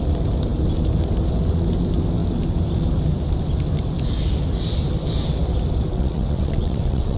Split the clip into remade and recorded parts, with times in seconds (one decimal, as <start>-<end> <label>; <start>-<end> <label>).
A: 0.0-5.9 recorded; 5.9-7.2 remade